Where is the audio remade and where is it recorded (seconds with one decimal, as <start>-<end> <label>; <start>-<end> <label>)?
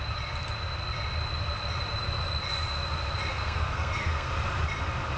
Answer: 0.0-3.3 recorded; 3.3-4.3 remade; 4.3-5.2 recorded